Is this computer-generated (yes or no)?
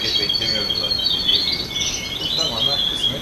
no